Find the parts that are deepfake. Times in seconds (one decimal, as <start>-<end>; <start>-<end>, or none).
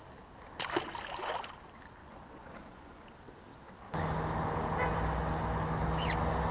2.0-3.0